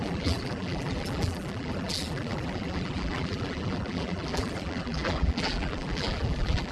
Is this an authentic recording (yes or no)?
no